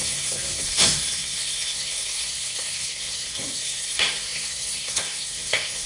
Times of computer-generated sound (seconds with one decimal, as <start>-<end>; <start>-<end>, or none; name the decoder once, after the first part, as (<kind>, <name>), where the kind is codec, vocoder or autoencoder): 0.0-5.9 (codec, SNAC)